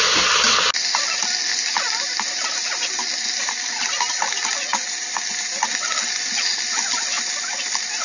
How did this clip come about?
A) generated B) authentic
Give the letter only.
B